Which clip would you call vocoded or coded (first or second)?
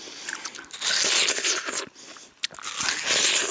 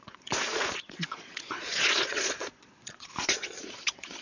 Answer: second